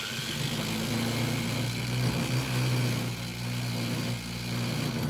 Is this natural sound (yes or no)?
yes